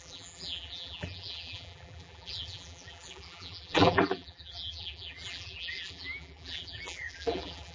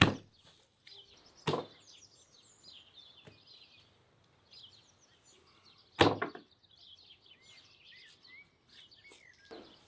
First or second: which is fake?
first